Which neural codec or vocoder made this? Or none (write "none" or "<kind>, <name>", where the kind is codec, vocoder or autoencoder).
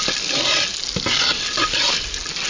none